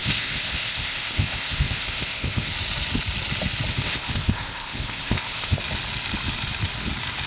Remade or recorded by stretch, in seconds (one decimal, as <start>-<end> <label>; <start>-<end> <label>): 0.0-2.5 remade; 2.5-3.7 recorded; 3.7-5.6 remade; 5.6-7.3 recorded